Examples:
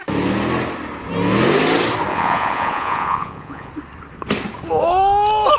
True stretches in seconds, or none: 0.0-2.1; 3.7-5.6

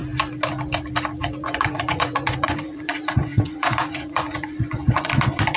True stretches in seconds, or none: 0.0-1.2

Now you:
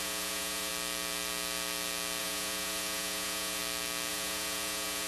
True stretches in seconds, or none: 0.7-2.2; 3.6-4.1

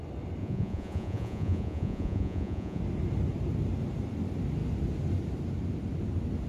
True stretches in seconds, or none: 0.0-0.4; 2.8-6.5

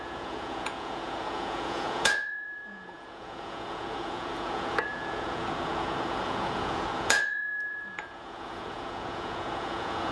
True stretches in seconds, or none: none

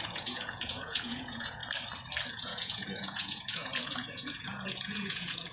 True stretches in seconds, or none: 1.6-2.3

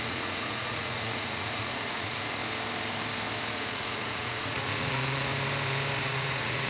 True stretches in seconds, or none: 2.4-3.5; 5.3-6.0